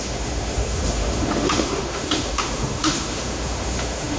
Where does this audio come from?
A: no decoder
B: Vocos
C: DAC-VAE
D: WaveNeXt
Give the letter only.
C